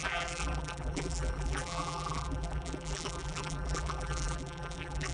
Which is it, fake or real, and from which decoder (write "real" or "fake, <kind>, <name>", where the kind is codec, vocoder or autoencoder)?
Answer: fake, vocoder, BigVGAN v2